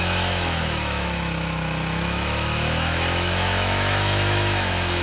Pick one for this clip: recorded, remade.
remade